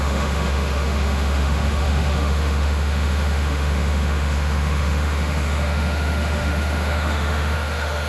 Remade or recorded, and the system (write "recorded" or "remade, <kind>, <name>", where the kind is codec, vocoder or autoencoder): remade, autoencoder, DAC-VAE